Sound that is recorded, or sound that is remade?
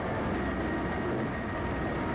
recorded